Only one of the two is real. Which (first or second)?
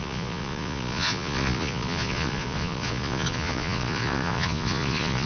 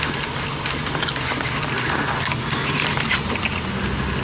second